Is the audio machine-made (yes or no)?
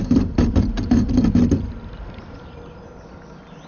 no